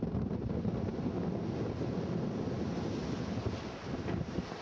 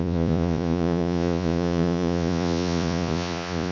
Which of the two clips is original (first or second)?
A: first